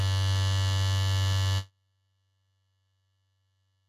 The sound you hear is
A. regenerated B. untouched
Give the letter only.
B